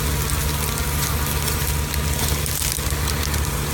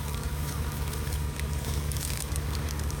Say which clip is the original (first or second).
first